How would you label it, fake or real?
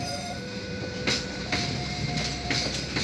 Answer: fake